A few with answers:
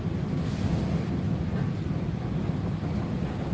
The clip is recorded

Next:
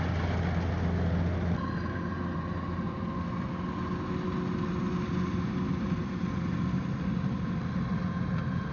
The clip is recorded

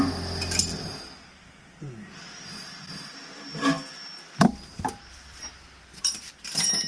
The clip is recorded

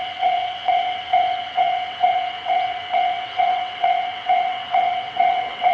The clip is remade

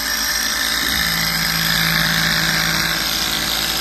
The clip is recorded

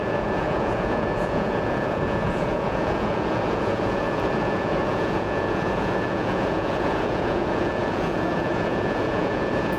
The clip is remade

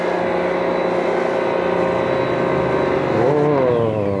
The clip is recorded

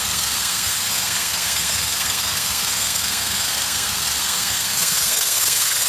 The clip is remade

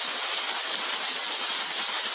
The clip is recorded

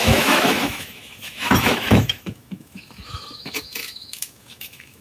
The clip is remade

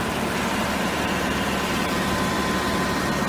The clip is recorded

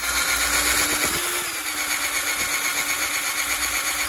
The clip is recorded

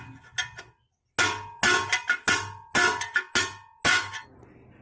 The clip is recorded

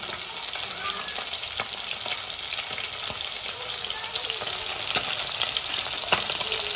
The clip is recorded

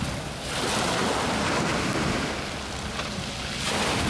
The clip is recorded